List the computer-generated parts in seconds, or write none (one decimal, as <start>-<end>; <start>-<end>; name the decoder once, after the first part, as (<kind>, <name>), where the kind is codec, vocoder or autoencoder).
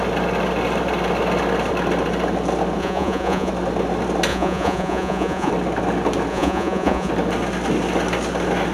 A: 2.8-3.5 (vocoder, Vocos); 4.3-5.5; 6.3-7.1